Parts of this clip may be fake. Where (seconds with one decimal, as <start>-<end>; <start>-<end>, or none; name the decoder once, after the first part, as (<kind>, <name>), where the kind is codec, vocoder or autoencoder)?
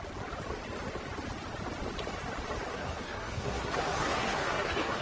2.7-5.0 (codec, SNAC)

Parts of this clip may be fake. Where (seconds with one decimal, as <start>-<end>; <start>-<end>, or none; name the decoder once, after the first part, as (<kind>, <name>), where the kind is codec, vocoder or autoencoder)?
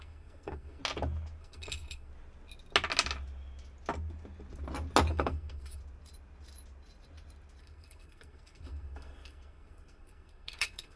0.0-0.8 (codec, SNAC); 1.4-2.1; 5.1-5.8; 7.6-11.0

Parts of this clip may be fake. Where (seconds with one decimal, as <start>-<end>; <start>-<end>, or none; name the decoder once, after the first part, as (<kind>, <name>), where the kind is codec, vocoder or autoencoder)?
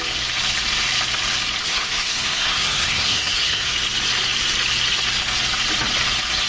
1.6-3.7 (codec, SNAC)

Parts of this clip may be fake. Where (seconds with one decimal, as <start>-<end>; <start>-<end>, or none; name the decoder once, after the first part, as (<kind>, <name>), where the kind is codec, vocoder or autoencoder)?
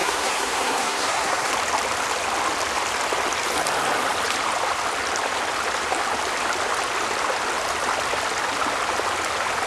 0.0-1.5 (codec, SNAC)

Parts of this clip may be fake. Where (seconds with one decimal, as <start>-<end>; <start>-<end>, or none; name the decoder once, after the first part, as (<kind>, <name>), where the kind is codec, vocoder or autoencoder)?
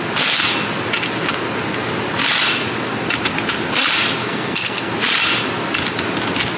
4.2-4.9 (codec, SNAC)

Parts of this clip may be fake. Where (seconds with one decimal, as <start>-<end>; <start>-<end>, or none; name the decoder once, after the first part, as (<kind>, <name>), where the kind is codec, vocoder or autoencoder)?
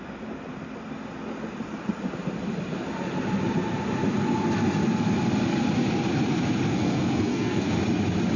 6.7-7.8 (codec, SNAC)